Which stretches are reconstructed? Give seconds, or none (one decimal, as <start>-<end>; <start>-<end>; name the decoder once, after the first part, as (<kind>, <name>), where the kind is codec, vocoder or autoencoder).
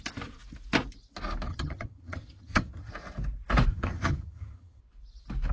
1.5-2.9 (vocoder, HiFi-GAN); 3.7-4.8